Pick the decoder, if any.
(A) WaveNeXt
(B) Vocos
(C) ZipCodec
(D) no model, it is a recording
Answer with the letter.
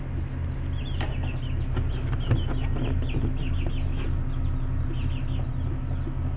D